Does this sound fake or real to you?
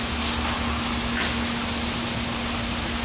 real